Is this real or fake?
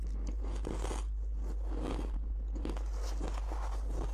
real